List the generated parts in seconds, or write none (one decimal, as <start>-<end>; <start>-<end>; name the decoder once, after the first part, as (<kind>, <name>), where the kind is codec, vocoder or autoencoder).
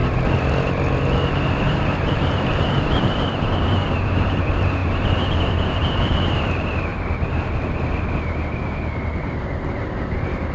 1.5-6.9 (vocoder, BigVGAN v2); 9.2-10.5